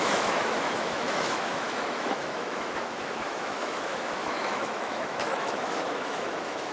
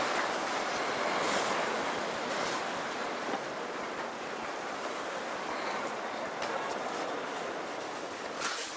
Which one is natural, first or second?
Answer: second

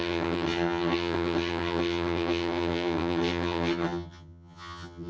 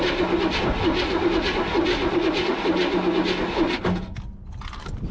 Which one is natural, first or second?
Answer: second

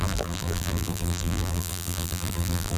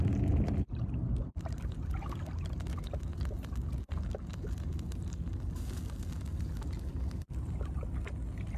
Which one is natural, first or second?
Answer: second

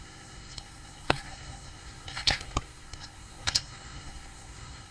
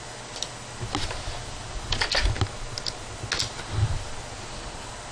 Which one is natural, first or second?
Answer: second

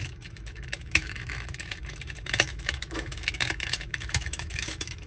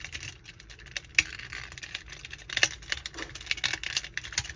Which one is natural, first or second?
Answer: second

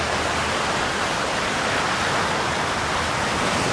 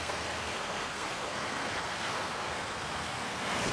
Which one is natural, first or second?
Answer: first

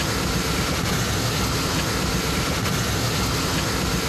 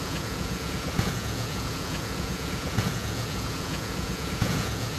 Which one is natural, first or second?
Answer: first